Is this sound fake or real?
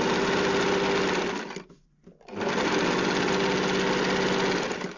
real